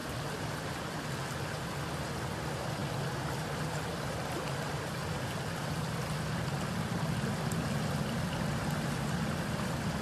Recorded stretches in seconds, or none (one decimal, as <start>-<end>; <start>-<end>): 0.0-10.0

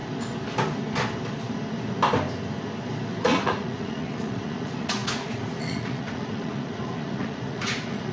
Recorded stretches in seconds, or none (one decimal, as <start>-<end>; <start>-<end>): 0.0-3.2

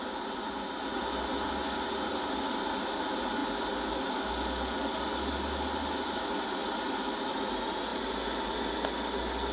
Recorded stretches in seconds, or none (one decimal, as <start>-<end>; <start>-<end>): 0.0-9.5

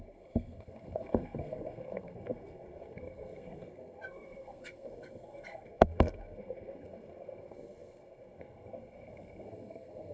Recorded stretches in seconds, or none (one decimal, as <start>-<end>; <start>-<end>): none

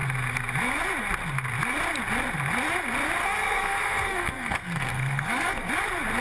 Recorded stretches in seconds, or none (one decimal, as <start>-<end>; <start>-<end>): 0.0-3.2; 5.7-6.2

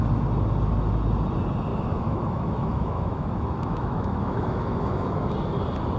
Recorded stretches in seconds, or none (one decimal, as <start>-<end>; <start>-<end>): 0.0-1.7; 5.3-6.0

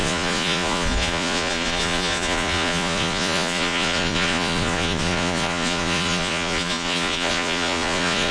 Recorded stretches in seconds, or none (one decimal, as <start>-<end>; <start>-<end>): none